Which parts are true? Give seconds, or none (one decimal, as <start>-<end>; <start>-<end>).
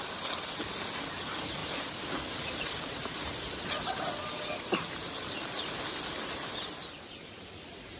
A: 0.0-8.0